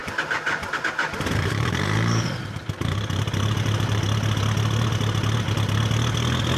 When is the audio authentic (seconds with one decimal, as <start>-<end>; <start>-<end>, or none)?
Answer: 4.0-6.6